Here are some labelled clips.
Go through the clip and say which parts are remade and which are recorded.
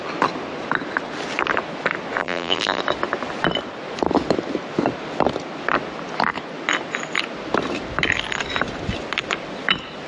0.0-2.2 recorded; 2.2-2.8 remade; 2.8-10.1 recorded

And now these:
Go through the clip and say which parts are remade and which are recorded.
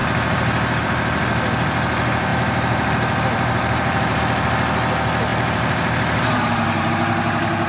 0.0-2.3 recorded; 2.3-4.2 remade; 4.2-5.3 recorded; 5.3-6.9 remade; 6.9-7.7 recorded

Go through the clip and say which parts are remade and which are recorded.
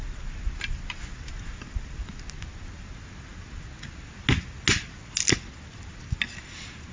0.0-6.9 recorded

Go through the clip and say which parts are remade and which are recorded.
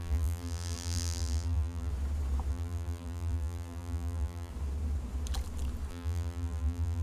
0.0-1.9 remade; 1.9-2.5 recorded; 2.5-4.5 remade; 4.5-5.9 recorded; 5.9-7.0 remade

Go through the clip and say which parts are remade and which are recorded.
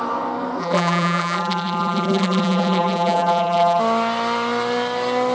0.0-0.6 recorded; 0.6-3.8 remade; 3.8-5.3 recorded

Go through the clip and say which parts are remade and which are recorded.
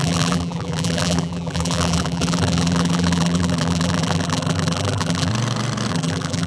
0.0-5.3 remade; 5.3-5.9 recorded; 5.9-6.5 remade